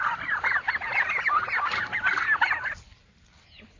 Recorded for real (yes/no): yes